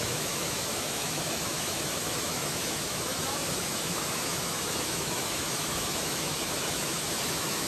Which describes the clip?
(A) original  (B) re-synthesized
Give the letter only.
B